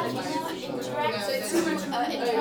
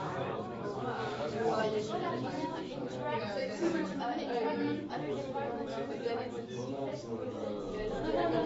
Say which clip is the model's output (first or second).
second